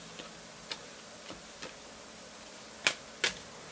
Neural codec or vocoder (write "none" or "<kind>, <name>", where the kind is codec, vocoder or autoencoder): none